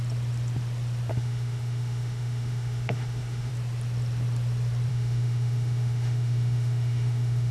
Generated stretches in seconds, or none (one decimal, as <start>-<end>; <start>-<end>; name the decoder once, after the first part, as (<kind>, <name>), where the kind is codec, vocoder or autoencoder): 1.1-3.5 (autoencoder, DAC-VAE); 4.9-7.5